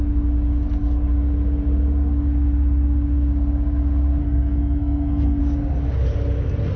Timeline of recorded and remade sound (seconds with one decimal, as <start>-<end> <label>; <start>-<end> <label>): 0.0-4.2 recorded; 4.2-5.4 remade; 5.4-6.8 recorded